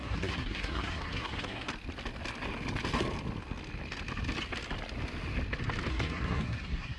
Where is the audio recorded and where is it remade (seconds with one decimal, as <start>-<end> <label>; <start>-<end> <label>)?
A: 0.0-1.7 remade; 1.7-5.9 recorded; 5.9-7.0 remade